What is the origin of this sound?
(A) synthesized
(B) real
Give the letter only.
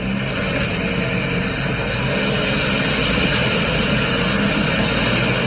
B